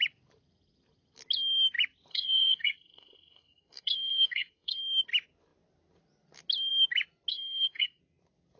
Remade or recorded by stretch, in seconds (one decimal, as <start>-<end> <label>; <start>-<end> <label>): 0.0-2.1 recorded; 2.1-4.8 remade; 4.8-7.3 recorded; 7.3-8.0 remade; 8.0-8.6 recorded

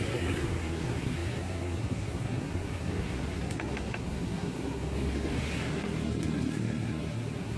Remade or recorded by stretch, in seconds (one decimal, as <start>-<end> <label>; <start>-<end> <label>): 0.0-7.6 remade

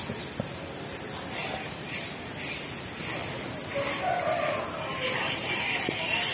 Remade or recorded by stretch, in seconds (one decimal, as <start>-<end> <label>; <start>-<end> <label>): 0.0-1.4 recorded; 1.4-2.1 remade; 2.1-6.3 recorded

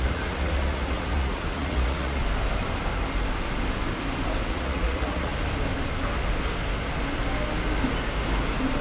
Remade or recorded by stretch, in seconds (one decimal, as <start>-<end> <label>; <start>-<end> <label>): 0.0-2.2 remade; 2.2-4.5 recorded; 4.5-5.3 remade; 5.3-8.8 recorded

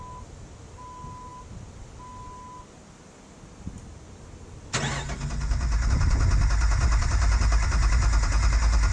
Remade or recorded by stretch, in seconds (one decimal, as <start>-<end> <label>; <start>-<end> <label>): 0.0-8.9 recorded

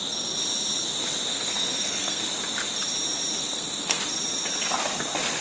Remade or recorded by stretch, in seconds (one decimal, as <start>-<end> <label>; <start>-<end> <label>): 0.0-1.3 recorded; 1.3-2.2 remade; 2.2-3.4 recorded; 3.4-4.0 remade; 4.0-5.4 recorded